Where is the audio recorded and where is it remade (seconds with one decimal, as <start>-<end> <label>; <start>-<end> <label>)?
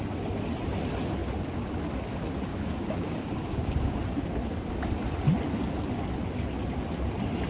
0.0-2.5 recorded; 2.5-4.0 remade; 4.0-7.5 recorded